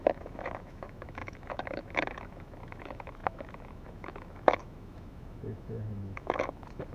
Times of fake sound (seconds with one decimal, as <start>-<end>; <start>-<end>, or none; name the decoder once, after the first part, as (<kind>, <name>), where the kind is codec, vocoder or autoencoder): 0.0-6.9 (autoencoder, DAC-VAE)